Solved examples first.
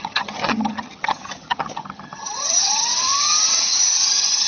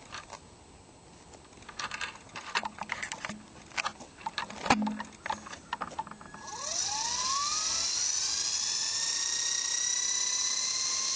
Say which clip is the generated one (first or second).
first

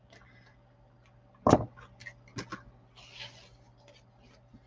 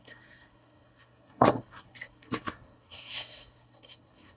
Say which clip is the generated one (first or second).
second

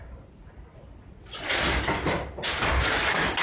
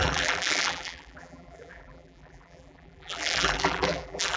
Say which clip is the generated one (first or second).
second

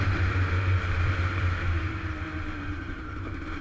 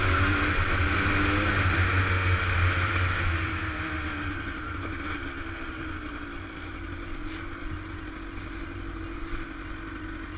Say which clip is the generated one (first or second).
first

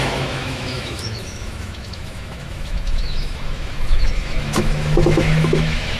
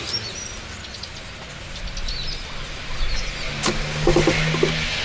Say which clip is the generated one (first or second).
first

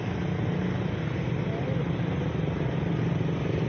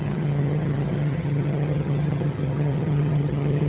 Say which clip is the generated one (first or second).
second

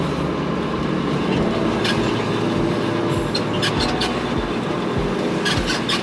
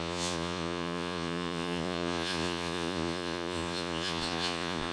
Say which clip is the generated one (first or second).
second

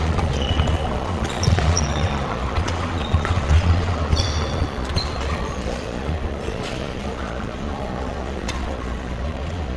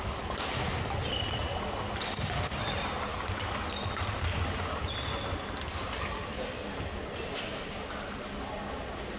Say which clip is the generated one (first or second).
first